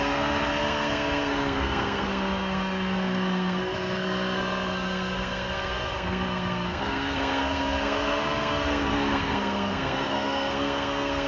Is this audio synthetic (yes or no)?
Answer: yes